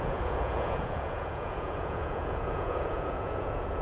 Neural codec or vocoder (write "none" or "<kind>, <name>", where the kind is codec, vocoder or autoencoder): vocoder, Vocos